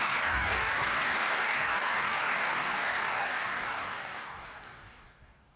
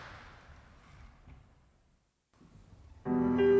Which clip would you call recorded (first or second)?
second